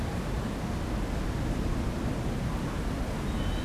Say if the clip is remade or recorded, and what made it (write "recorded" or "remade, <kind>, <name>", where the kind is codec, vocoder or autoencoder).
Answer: recorded